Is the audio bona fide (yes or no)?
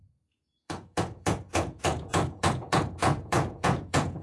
no